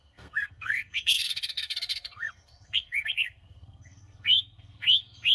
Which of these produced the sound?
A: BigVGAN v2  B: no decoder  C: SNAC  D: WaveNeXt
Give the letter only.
C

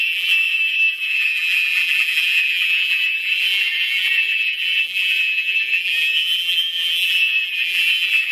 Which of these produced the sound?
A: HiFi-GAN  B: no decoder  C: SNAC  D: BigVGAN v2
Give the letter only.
D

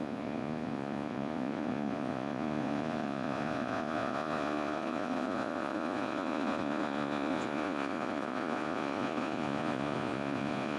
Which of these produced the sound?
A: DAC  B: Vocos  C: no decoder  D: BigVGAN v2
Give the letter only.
B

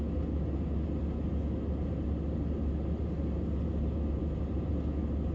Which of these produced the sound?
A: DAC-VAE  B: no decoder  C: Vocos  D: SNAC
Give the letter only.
B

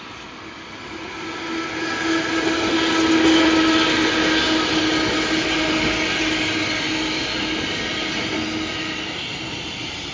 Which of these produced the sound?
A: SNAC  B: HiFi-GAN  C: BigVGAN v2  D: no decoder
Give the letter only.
D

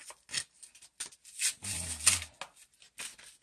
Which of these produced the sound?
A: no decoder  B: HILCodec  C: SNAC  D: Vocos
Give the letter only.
A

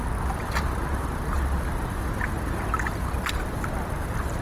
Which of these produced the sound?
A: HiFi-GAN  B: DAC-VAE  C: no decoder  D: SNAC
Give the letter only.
C